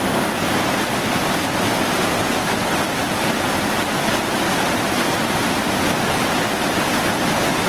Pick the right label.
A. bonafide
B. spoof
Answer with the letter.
A